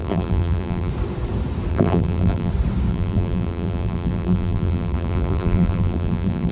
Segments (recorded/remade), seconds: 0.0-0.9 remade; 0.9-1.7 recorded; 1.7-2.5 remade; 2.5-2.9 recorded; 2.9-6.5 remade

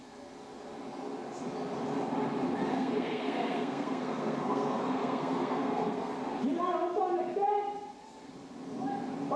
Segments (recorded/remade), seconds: 0.0-2.7 recorded; 2.7-6.1 remade; 6.1-9.4 recorded

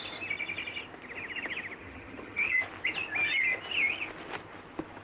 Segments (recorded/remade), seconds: 0.0-1.8 recorded; 1.8-2.6 remade; 2.6-5.0 recorded

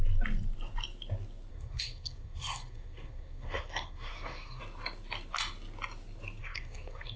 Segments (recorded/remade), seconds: 0.0-1.5 recorded; 1.5-4.6 remade; 4.6-6.4 recorded; 6.4-7.2 remade

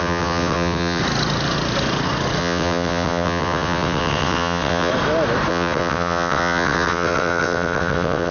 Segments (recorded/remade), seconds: 0.0-1.0 remade; 1.0-2.4 recorded; 2.4-4.9 remade; 4.9-5.5 recorded; 5.5-8.3 remade

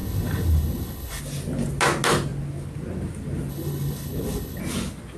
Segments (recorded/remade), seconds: 0.0-1.2 remade; 1.2-3.5 recorded; 3.5-4.6 remade; 4.6-5.2 recorded

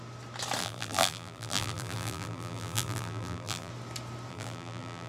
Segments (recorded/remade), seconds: 0.0-0.6 recorded; 0.6-3.7 remade; 3.7-4.3 recorded; 4.3-5.1 remade